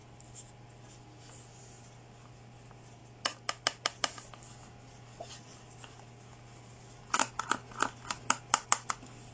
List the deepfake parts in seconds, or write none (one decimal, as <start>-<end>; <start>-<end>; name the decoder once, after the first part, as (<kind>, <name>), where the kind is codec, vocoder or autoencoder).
none